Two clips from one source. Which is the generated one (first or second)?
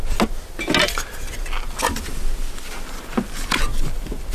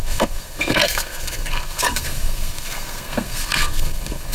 second